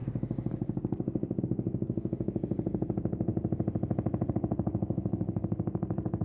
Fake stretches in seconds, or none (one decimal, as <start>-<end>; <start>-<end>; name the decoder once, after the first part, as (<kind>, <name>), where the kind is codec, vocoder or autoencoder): 0.0-3.3 (codec, DAC); 4.3-6.2

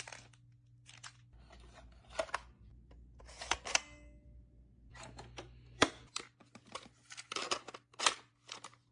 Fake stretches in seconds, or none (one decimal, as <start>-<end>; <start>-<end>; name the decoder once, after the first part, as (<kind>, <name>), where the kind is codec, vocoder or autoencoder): none

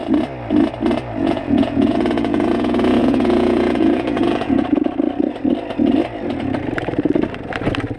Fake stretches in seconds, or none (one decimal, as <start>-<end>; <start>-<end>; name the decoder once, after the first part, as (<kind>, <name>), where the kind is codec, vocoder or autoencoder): 1.2-4.9 (vocoder, Vocos)